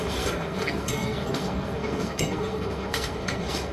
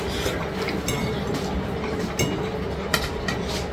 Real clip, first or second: second